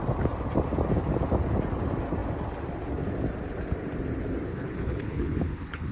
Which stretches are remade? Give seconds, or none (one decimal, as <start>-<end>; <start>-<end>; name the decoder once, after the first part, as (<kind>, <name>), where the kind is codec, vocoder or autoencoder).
4.5-5.9 (codec, HILCodec)